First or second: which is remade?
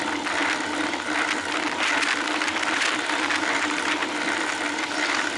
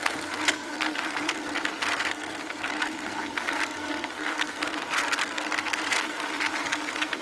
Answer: second